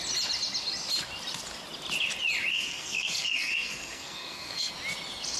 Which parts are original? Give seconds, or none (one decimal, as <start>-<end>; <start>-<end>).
0.0-2.5; 4.7-5.4